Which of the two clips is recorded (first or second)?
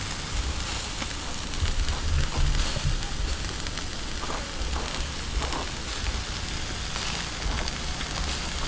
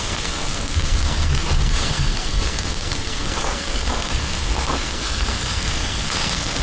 first